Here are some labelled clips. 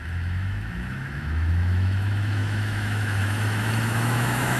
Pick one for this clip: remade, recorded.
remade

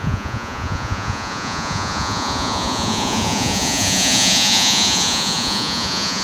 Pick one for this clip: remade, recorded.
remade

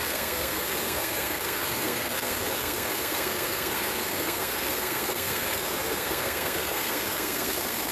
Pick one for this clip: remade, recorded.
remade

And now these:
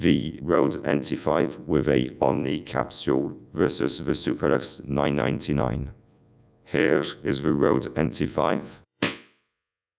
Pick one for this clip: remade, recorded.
remade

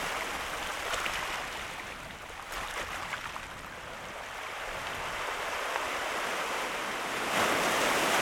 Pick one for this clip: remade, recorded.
recorded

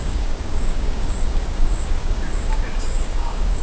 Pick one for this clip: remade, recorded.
remade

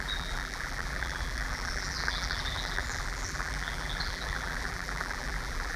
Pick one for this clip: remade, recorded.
remade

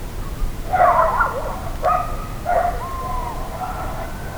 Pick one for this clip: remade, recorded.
recorded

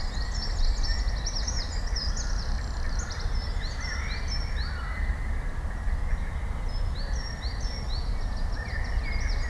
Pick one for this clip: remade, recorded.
recorded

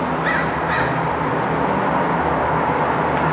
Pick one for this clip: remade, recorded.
recorded